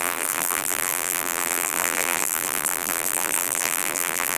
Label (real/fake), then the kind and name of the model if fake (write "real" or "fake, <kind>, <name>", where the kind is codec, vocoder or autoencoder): fake, vocoder, BigVGAN v2